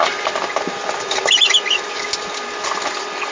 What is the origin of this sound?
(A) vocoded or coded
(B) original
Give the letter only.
B